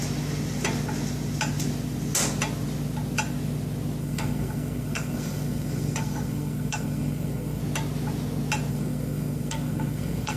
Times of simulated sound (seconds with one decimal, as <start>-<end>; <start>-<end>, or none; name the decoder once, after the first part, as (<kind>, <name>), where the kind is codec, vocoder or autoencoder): 4.0-7.6 (codec, SNAC); 8.7-10.4

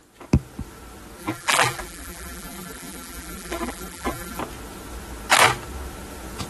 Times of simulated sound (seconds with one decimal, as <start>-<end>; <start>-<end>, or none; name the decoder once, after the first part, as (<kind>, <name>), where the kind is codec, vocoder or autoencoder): 1.2-4.4 (vocoder, BigVGAN v2)

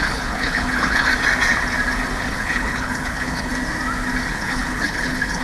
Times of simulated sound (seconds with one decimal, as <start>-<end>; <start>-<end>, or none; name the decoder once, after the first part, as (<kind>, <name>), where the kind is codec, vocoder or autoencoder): 0.0-1.1 (codec, HILCodec); 2.2-3.5; 4.3-5.4

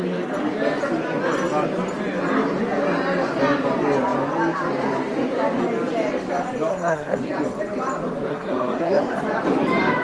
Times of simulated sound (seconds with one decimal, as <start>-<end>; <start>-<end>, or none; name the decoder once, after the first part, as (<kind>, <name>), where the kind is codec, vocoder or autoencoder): 6.7-7.3 (codec, SNAC); 8.3-9.2

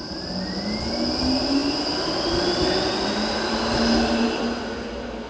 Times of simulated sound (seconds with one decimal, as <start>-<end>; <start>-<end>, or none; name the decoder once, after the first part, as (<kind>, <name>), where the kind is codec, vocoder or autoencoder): none